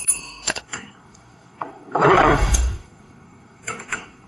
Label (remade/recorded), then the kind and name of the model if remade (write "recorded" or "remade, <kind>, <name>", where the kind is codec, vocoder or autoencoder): remade, codec, SNAC